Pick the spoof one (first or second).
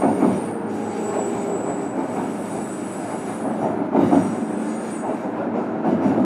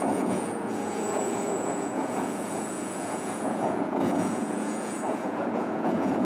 second